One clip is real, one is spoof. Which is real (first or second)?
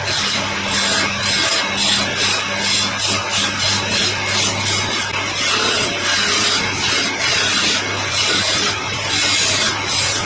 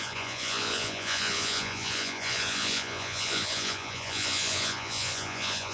first